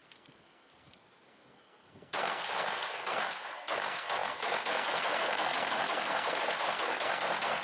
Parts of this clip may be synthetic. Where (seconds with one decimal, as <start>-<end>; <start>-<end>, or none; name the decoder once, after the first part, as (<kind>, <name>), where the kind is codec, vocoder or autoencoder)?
0.0-7.6 (codec, SNAC)